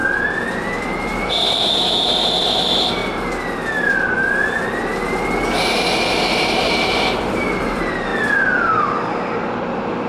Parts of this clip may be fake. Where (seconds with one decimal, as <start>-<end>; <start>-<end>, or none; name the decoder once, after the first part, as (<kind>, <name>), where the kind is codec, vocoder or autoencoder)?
0.6-3.0 (vocoder, BigVGAN v2); 6.1-8.1; 8.8-10.1